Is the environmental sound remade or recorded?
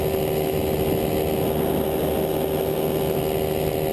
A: recorded